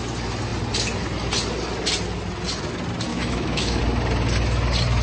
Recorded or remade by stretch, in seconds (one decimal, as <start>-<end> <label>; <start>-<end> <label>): 0.0-3.1 recorded; 3.1-3.8 remade; 3.8-5.0 recorded